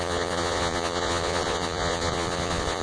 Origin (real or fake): fake